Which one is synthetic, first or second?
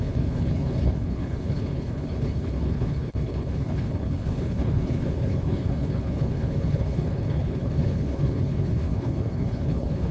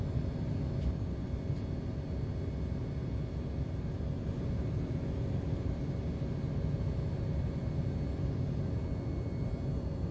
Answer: first